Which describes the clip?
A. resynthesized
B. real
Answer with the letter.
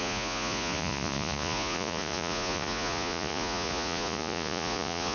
A